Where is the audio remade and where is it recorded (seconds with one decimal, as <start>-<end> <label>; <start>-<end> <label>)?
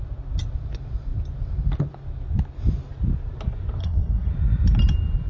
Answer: 0.0-3.8 recorded; 3.8-4.3 remade; 4.3-5.3 recorded